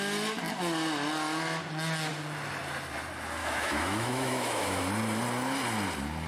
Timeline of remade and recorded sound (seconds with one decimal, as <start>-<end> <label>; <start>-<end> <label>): 0.0-3.4 recorded; 3.4-4.8 remade; 4.8-6.3 recorded